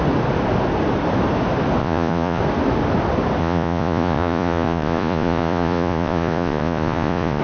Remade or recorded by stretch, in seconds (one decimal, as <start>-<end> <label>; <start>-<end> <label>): 0.0-1.8 recorded; 1.8-2.4 remade; 2.4-3.4 recorded; 3.4-7.4 remade